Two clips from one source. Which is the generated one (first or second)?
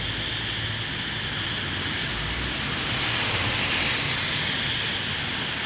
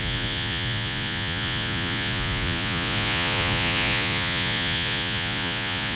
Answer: second